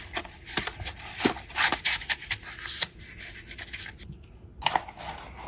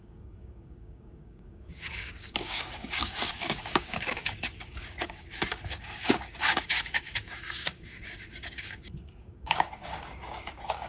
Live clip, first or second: first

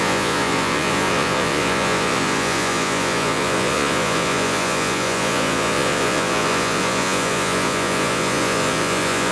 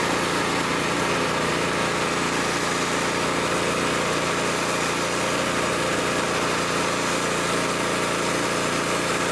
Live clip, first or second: second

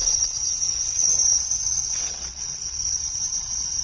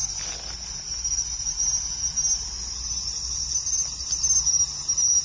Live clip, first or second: second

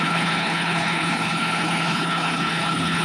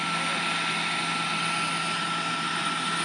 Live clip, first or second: second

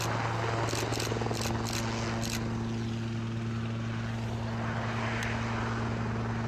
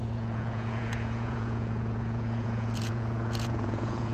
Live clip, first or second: first